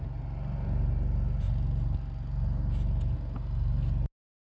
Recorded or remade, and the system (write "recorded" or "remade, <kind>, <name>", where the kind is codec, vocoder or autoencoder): recorded